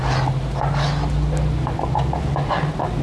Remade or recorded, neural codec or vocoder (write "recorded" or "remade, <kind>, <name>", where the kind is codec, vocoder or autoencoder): recorded